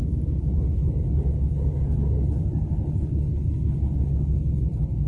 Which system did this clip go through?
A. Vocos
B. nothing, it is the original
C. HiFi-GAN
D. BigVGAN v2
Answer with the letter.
B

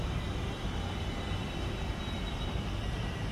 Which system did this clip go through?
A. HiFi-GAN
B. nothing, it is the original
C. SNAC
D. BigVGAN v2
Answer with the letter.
B